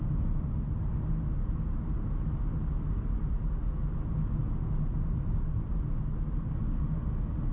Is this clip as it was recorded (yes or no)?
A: yes